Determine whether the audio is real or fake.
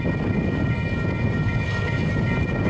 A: real